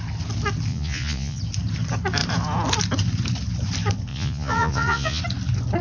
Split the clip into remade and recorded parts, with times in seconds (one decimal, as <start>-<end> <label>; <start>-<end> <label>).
0.0-0.7 recorded; 0.7-1.4 remade; 1.4-4.1 recorded; 4.1-5.2 remade; 5.2-5.8 recorded